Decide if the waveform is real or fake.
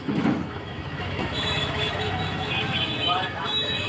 fake